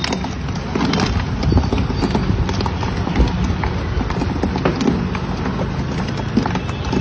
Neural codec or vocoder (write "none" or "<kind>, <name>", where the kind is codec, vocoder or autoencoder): none